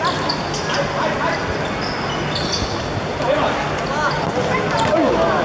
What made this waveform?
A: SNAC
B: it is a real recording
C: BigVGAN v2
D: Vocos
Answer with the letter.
B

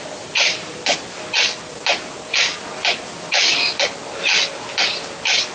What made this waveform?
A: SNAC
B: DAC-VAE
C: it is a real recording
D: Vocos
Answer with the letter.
C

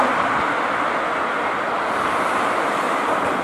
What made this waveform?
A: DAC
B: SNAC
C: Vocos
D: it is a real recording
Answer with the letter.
D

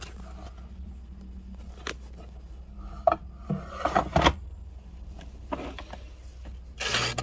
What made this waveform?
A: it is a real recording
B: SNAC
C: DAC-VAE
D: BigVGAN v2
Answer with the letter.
A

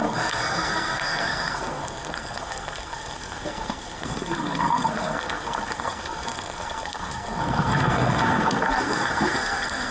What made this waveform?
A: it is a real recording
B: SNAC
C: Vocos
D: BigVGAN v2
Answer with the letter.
B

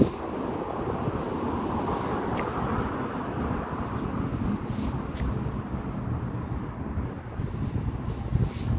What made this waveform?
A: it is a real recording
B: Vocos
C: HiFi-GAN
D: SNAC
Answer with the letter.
A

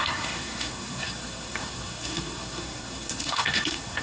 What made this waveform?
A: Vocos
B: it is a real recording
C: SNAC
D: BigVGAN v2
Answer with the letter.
C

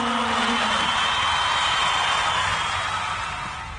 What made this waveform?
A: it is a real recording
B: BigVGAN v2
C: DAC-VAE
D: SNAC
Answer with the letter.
A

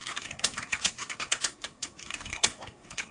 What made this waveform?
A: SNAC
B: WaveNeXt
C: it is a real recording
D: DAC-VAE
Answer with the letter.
A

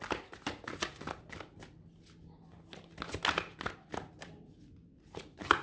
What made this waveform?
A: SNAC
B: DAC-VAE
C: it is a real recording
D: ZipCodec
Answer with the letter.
C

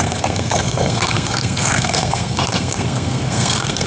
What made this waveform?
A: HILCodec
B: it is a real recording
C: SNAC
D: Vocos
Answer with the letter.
C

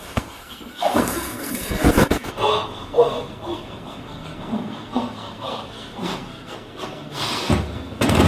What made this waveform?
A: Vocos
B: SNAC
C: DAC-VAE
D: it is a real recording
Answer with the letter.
B